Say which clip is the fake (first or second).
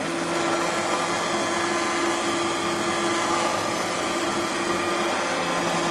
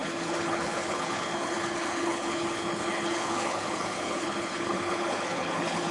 second